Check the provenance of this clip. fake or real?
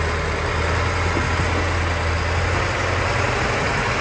real